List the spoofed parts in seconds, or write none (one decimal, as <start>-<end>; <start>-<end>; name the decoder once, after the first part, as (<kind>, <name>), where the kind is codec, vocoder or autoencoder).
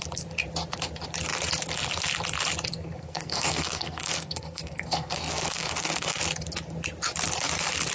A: 2.7-6.2 (codec, SNAC)